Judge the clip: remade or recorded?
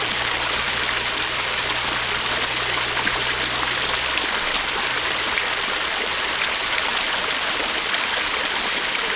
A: remade